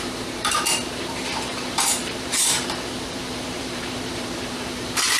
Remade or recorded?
remade